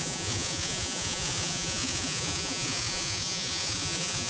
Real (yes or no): no